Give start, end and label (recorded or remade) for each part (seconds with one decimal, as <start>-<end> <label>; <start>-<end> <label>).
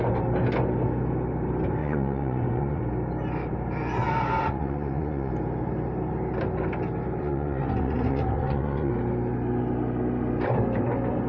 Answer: 0.0-1.8 recorded; 1.8-2.8 remade; 2.8-4.4 recorded; 4.4-5.3 remade; 5.3-7.2 recorded; 7.2-8.9 remade; 8.9-11.3 recorded